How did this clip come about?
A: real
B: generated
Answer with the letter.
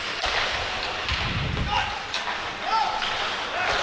A